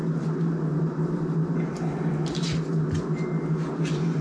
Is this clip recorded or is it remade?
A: recorded